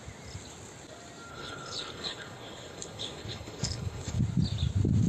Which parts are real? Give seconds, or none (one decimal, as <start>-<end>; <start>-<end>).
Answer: 0.0-1.3; 4.2-5.1